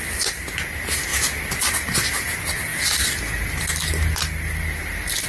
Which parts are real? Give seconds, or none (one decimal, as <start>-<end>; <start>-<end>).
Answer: 0.0-5.3